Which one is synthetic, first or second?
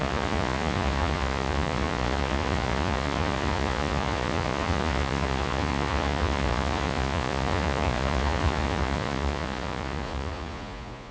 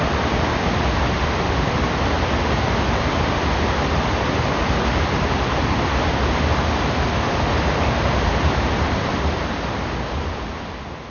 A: first